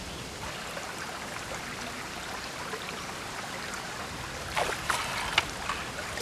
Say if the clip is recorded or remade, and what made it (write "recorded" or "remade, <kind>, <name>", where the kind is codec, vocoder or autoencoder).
recorded